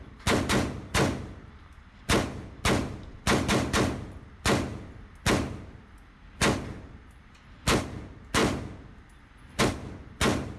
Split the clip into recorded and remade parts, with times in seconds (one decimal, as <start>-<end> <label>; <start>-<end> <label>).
0.0-10.6 recorded